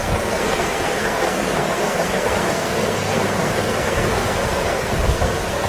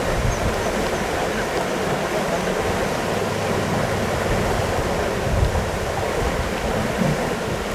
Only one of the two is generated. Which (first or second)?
first